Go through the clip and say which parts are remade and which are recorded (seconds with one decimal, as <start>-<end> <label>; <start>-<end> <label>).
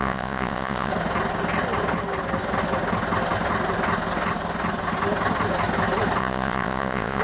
0.0-0.9 remade; 0.9-6.2 recorded; 6.2-7.2 remade